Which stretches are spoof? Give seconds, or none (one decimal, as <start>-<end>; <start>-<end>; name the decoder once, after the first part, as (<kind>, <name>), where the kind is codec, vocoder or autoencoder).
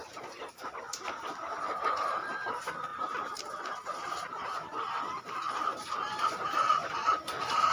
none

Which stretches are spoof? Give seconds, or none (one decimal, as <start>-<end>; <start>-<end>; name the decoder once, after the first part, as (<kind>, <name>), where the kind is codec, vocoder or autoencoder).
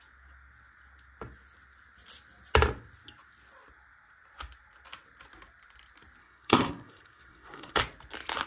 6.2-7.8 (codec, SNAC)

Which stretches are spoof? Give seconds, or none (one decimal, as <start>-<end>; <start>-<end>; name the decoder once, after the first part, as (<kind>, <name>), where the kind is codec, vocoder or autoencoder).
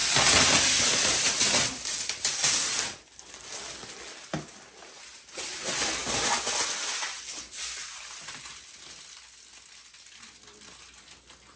none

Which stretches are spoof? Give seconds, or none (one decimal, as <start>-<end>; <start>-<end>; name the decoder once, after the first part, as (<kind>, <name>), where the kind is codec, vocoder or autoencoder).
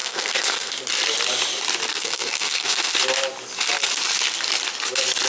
0.0-0.7 (codec, SNAC); 1.9-2.9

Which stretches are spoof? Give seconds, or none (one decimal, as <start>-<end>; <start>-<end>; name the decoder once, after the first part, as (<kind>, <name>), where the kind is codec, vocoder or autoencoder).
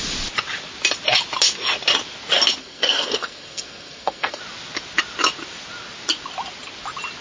2.6-4.4 (codec, SNAC)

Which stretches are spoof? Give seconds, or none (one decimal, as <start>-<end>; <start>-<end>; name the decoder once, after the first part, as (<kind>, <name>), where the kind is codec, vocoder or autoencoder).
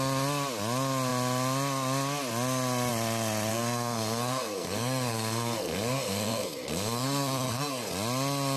3.5-7.9 (codec, SNAC)